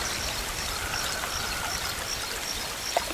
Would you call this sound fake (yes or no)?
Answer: no